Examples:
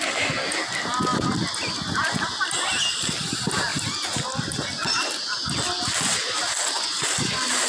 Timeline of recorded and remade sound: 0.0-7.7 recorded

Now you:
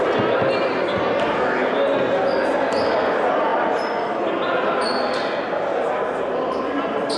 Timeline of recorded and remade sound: 0.0-7.2 recorded

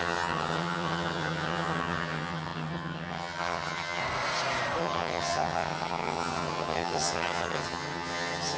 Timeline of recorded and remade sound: 0.0-4.0 remade; 4.0-4.8 recorded; 4.8-8.6 remade

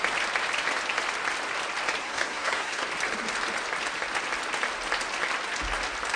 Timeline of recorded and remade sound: 0.0-2.0 recorded; 2.0-2.8 remade; 2.8-6.2 recorded

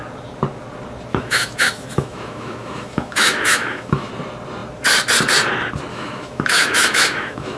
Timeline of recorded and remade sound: 0.0-1.1 recorded; 1.1-4.1 remade; 4.1-5.9 recorded; 5.9-7.6 remade